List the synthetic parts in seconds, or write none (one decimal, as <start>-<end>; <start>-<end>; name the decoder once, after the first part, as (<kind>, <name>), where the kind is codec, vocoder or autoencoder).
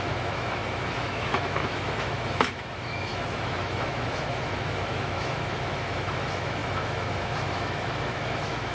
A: 0.0-8.7 (autoencoder, DAC-VAE)